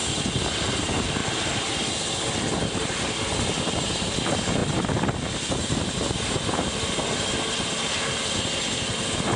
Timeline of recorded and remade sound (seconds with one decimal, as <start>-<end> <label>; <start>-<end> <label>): 0.0-9.4 recorded